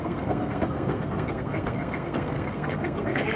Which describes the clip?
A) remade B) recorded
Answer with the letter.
A